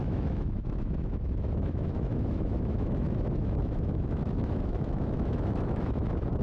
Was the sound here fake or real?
fake